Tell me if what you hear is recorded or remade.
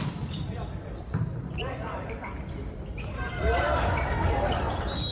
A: recorded